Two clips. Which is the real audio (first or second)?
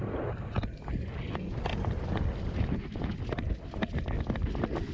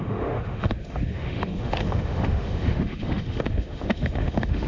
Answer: first